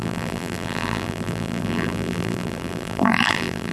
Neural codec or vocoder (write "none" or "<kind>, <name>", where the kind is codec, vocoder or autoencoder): vocoder, BigVGAN v2